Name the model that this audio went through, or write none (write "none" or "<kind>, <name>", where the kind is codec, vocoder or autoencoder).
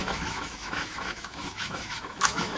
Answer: autoencoder, DAC-VAE